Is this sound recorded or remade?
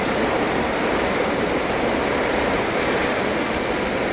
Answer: recorded